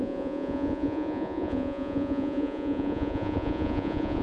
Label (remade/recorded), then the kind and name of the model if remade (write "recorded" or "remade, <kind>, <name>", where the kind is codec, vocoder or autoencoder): remade, vocoder, Vocos